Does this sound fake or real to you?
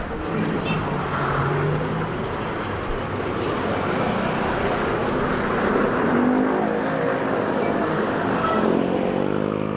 real